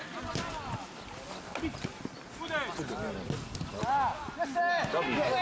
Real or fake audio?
real